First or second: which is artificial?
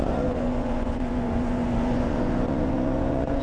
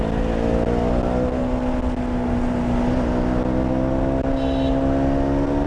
first